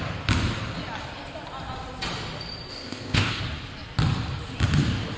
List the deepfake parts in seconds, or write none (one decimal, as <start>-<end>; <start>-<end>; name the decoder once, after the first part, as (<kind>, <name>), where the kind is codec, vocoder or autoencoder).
2.7-3.4 (codec, ZipCodec)